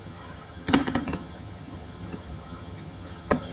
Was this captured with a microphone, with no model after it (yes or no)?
no